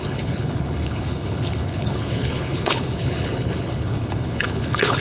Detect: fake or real fake